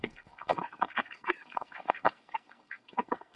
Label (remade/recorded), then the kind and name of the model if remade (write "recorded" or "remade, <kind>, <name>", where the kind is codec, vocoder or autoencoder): remade, codec, SNAC